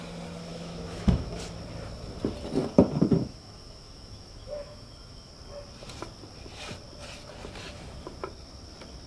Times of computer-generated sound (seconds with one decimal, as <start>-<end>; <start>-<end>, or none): 0.5-1.4; 2.6-5.3

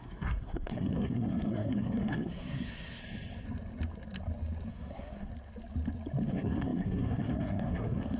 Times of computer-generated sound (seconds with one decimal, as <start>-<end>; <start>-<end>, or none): 0.0-3.0; 4.7-5.3; 6.3-8.2

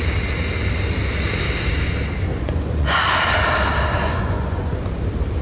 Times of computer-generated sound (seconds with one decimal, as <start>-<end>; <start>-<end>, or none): 2.3-3.0; 4.0-4.7

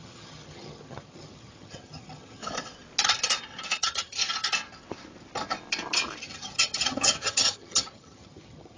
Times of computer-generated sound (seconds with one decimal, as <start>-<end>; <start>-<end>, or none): 0.0-2.4; 3.8-4.2; 6.2-8.8

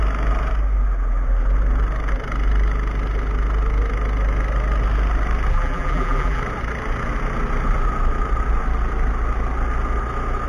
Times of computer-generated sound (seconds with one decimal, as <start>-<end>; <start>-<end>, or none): 5.5-6.4

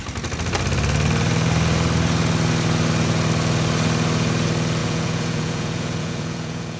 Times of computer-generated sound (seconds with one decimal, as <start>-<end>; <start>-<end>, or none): 4.8-6.8

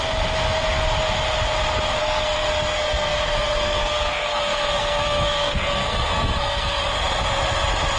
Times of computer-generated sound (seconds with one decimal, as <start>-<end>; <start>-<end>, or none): 2.0-6.8